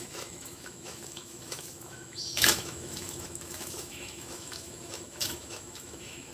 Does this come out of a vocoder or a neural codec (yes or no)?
yes